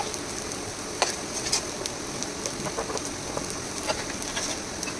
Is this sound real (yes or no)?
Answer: no